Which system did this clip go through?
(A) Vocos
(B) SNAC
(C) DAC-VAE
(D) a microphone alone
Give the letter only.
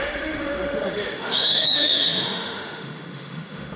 C